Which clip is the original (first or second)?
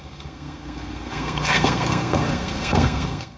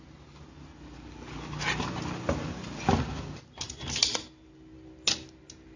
second